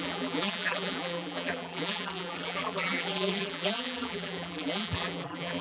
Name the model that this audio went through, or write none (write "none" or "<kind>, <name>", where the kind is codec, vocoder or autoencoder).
vocoder, BigVGAN v2